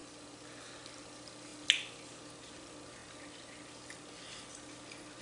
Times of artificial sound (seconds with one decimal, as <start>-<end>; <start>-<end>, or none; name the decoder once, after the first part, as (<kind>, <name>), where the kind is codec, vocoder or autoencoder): none